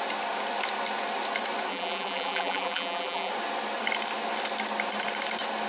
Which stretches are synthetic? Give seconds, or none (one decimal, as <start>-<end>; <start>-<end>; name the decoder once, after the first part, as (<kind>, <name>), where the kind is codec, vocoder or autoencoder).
1.7-3.3 (vocoder, BigVGAN v2)